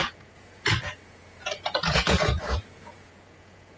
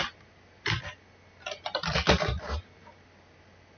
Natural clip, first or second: second